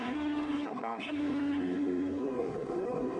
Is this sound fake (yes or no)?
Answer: yes